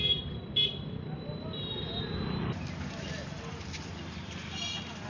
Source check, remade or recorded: recorded